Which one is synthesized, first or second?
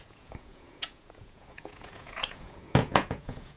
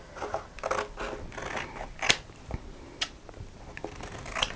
first